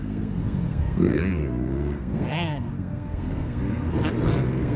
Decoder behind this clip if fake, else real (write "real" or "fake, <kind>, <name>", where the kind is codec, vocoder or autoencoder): fake, codec, SNAC